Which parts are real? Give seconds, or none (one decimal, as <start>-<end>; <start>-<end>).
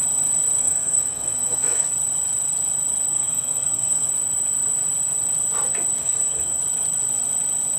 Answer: 0.0-0.6; 1.9-3.1; 4.1-6.0; 6.6-7.8